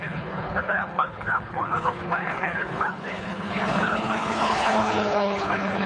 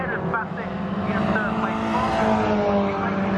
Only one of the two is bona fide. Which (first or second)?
second